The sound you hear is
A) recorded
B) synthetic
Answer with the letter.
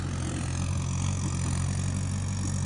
A